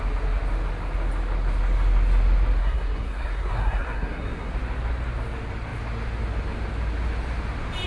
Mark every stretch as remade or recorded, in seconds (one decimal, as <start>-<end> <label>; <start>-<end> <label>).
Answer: 0.0-2.6 recorded; 2.6-4.5 remade; 4.5-7.9 recorded